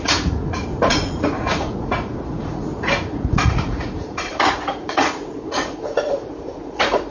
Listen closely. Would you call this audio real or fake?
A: fake